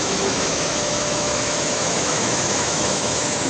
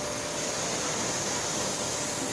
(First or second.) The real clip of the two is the second